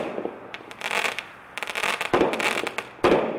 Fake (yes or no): no